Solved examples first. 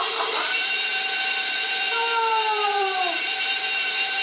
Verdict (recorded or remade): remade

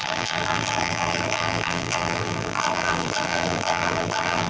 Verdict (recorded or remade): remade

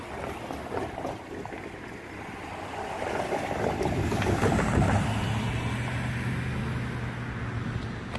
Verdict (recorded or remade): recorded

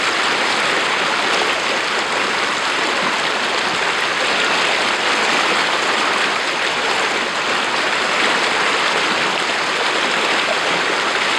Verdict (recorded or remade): recorded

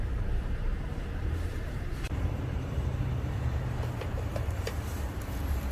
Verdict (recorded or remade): remade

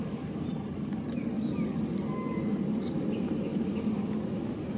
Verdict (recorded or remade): recorded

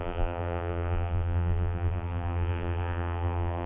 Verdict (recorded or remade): remade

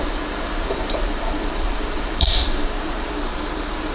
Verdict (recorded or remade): remade